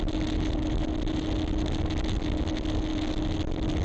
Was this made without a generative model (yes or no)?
yes